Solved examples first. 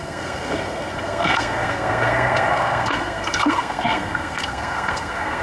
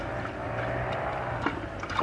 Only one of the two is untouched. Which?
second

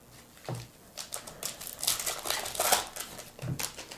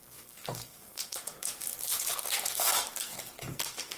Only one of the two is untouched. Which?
first